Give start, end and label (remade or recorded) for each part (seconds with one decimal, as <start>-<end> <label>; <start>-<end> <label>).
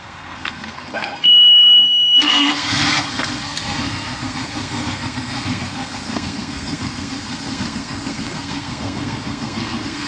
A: 0.0-10.1 remade